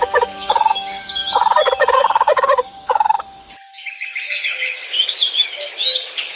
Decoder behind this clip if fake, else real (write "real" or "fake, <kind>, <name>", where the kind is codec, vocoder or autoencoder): fake, codec, DAC